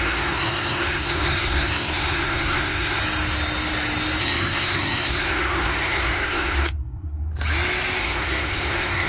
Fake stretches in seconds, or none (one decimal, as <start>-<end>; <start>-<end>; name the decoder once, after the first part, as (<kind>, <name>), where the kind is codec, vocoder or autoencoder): 0.0-3.0 (codec, SNAC); 4.2-7.3; 8.0-9.1